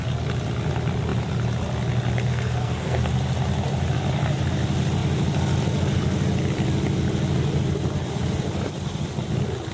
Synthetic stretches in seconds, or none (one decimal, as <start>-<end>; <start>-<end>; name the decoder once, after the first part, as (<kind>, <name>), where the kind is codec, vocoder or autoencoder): 2.3-3.0 (codec, SNAC)